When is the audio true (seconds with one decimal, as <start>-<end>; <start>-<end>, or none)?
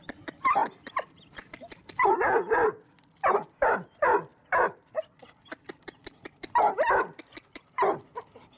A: 0.0-8.6